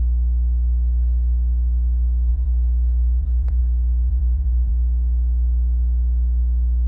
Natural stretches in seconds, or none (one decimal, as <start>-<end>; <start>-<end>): 0.0-2.3; 3.6-4.1; 4.7-6.9